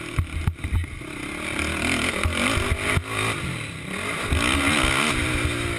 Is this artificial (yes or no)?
no